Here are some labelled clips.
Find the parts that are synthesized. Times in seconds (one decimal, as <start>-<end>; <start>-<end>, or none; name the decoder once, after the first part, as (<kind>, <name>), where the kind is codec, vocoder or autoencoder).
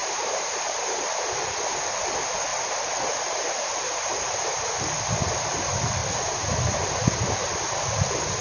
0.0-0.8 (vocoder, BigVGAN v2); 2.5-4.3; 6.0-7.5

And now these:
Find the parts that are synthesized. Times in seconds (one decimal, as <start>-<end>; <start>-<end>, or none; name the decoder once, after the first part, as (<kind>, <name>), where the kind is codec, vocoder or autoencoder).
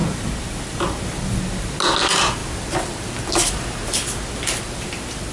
0.0-0.8 (vocoder, BigVGAN v2)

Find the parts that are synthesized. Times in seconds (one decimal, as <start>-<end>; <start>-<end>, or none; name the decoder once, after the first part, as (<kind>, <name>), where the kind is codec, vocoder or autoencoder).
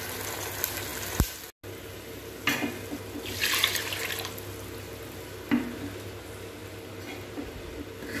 none